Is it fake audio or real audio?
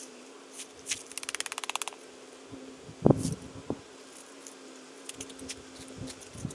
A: real